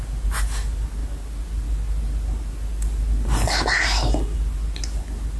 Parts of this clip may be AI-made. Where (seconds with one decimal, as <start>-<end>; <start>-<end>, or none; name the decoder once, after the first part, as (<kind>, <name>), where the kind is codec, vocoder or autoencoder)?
none